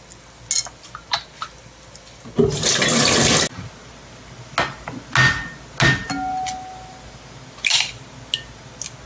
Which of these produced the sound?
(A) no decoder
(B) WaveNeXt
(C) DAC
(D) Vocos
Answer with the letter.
A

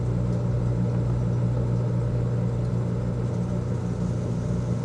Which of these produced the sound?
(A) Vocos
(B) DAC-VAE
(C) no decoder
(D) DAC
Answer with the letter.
C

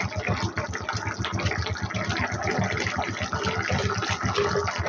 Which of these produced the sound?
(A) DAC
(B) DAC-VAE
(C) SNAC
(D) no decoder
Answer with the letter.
D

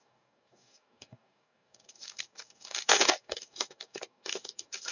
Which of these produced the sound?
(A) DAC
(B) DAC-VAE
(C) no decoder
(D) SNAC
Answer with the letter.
A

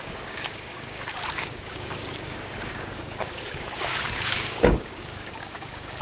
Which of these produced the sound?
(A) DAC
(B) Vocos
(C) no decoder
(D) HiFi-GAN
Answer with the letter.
A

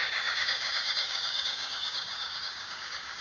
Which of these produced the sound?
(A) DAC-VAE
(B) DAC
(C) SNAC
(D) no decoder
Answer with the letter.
B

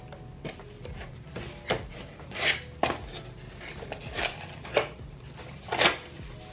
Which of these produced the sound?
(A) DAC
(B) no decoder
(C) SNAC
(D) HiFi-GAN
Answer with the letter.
B